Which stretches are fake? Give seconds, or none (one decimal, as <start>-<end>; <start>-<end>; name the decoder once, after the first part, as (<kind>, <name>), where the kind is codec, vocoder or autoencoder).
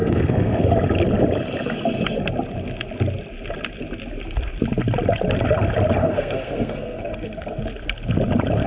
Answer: 0.0-0.7 (codec, SNAC); 6.0-7.6